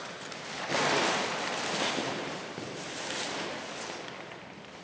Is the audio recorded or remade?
recorded